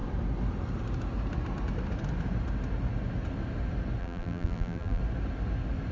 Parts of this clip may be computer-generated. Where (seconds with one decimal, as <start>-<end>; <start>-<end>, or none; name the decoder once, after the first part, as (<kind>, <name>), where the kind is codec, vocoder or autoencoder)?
4.0-5.0 (vocoder, BigVGAN v2)